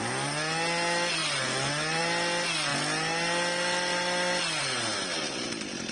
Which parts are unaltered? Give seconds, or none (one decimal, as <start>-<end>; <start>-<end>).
0.0-5.9